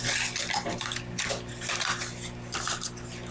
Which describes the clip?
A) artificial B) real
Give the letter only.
B